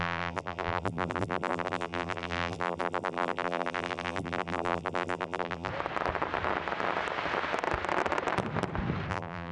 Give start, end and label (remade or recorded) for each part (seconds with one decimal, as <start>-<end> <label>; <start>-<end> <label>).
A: 0.0-5.7 remade; 5.7-9.1 recorded; 9.1-9.5 remade